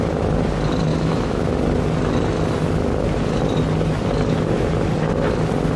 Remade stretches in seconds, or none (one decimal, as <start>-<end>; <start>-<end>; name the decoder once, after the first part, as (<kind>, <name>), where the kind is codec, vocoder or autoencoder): 0.9-1.5 (autoencoder, DAC-VAE)